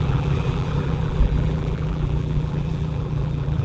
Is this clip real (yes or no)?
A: no